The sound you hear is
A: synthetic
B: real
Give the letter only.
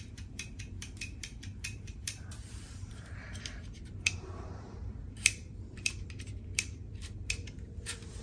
A